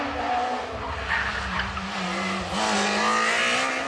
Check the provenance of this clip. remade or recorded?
recorded